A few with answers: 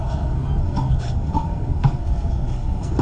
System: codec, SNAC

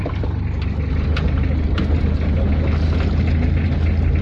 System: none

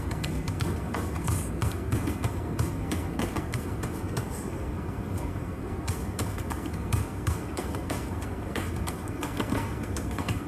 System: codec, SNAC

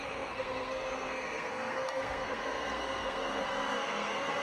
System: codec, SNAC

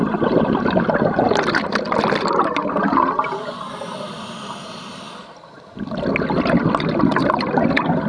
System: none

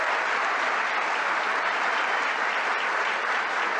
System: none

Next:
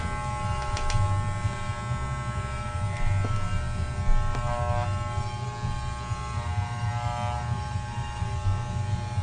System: none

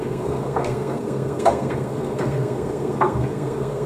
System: codec, SNAC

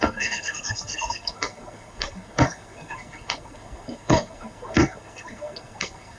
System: codec, SNAC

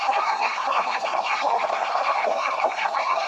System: codec, SNAC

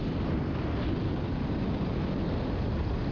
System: none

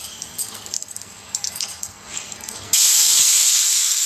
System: codec, SNAC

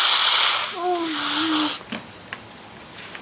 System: none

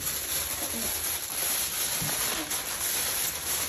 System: none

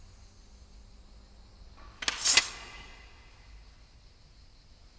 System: none